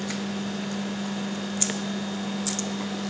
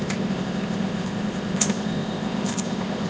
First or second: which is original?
first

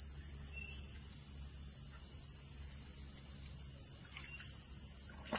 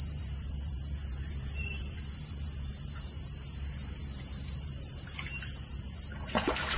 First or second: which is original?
first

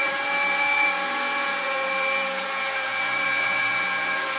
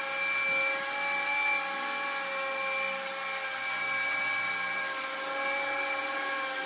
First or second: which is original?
second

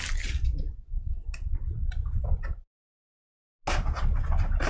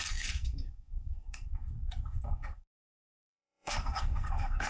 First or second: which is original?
first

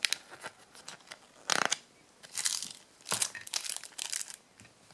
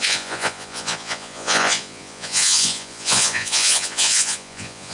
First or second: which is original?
first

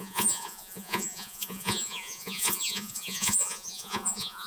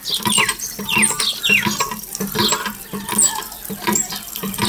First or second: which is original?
second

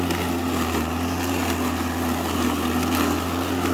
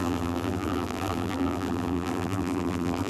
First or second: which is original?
first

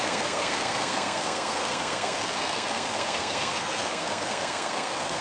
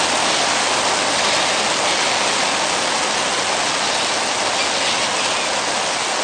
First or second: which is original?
second